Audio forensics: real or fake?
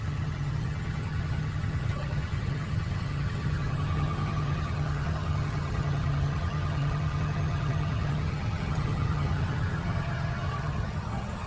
fake